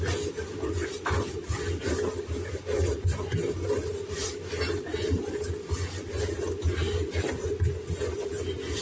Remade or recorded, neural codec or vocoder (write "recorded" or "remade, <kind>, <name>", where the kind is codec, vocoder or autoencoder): recorded